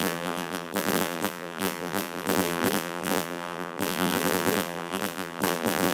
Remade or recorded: remade